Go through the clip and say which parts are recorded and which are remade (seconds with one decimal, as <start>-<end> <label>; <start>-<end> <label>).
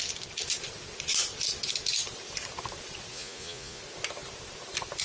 0.0-3.1 recorded; 3.1-3.8 remade; 3.8-5.0 recorded